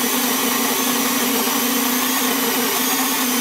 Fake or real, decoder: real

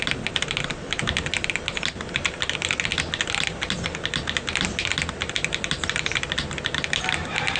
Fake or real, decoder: real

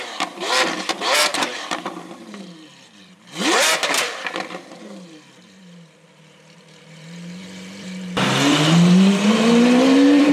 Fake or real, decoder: fake, vocoder, BigVGAN v2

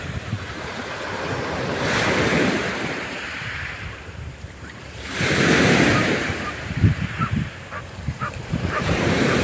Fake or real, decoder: fake, vocoder, BigVGAN v2